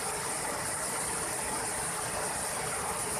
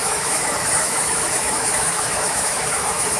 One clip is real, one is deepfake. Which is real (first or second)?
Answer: first